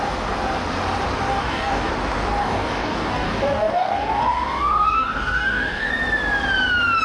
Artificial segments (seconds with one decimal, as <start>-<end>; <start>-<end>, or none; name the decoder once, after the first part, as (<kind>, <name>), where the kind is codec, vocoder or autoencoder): 1.3-1.9 (codec, DAC); 2.4-5.9